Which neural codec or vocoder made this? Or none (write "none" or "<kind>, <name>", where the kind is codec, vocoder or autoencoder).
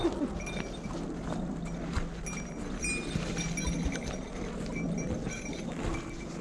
none